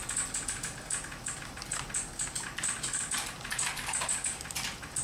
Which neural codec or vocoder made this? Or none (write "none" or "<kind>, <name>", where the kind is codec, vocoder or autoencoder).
none